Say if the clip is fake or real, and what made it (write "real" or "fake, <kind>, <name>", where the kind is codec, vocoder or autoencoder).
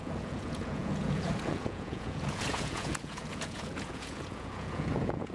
fake, vocoder, Vocos